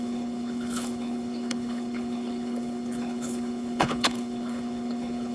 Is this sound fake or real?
fake